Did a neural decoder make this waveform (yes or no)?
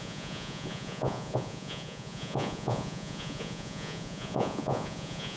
yes